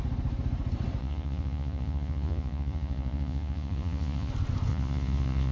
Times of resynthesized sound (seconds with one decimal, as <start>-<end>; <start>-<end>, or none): 1.0-4.3; 4.7-5.5